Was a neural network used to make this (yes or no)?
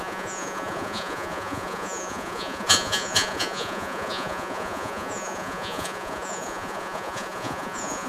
yes